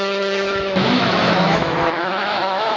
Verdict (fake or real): fake